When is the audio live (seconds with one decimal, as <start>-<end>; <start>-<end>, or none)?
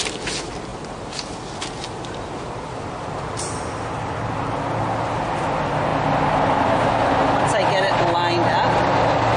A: 0.0-9.4